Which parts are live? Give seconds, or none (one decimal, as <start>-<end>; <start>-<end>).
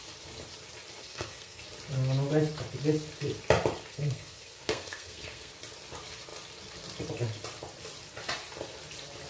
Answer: 0.0-1.0; 1.6-3.9; 5.5-9.3